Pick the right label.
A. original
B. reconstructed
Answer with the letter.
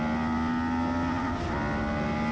A